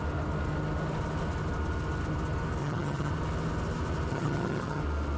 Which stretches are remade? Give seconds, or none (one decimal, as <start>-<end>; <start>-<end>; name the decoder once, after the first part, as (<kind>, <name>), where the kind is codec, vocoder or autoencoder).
2.6-3.1 (vocoder, HiFi-GAN); 4.1-4.8